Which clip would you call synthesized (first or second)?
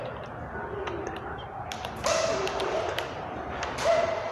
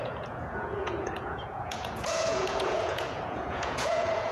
second